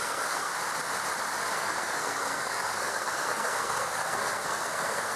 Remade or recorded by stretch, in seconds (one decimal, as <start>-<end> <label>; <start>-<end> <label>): 0.0-0.5 remade; 0.5-1.5 recorded; 1.5-5.2 remade